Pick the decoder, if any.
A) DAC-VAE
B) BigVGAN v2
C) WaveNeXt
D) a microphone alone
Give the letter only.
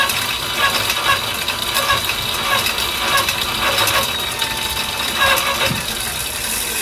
B